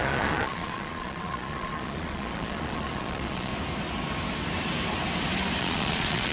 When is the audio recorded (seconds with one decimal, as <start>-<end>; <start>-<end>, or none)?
3.5-5.6